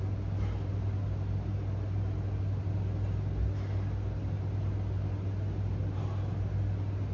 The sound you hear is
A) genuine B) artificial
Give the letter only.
A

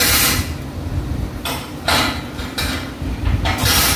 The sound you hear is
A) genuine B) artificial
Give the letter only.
A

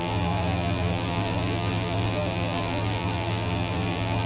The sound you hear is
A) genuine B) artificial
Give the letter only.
B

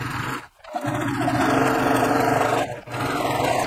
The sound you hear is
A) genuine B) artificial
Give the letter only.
B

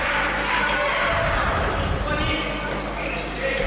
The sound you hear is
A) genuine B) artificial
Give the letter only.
A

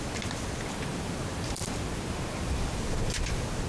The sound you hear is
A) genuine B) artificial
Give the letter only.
A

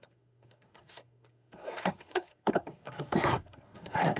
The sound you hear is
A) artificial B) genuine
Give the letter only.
A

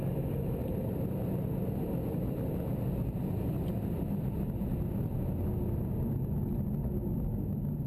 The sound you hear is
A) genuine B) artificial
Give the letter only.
A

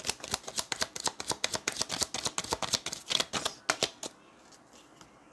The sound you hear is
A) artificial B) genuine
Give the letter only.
B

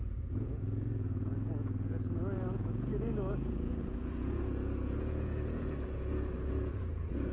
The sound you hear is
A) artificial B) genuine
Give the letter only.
A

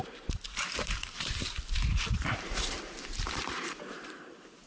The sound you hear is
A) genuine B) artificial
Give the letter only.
B